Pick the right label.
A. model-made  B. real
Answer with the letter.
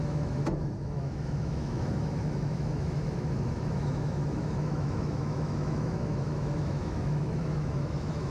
A